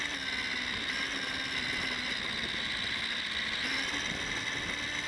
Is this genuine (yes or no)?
yes